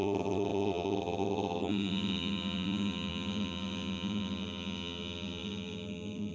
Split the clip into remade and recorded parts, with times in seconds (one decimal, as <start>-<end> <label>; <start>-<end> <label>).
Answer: 0.0-6.3 remade